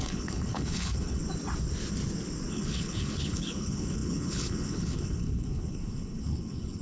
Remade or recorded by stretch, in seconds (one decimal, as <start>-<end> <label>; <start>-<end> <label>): 0.0-1.2 remade; 1.2-2.5 recorded; 2.5-6.8 remade